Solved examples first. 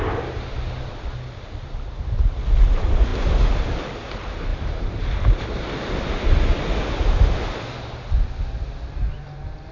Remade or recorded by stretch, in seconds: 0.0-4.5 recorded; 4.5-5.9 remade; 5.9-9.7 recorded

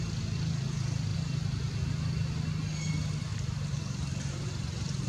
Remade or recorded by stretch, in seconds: 0.0-3.3 recorded; 3.3-5.1 remade

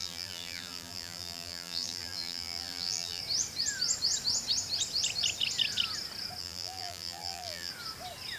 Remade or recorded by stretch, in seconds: 0.0-3.2 remade; 3.2-6.4 recorded; 6.4-7.7 remade; 7.7-8.4 recorded

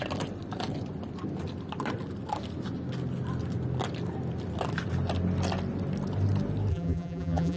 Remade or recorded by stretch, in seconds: 0.0-6.7 recorded; 6.7-7.6 remade

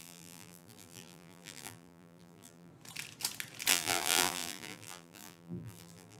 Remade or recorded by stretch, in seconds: 0.0-2.7 remade; 2.7-3.7 recorded; 3.7-6.2 remade

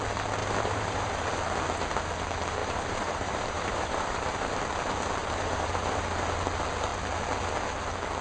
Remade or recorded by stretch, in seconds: 0.0-0.4 recorded; 0.4-1.3 remade; 1.3-2.6 recorded; 2.6-4.6 remade; 4.6-5.2 recorded; 5.2-6.0 remade; 6.0-8.2 recorded